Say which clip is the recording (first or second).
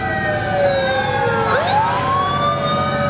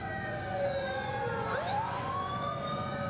first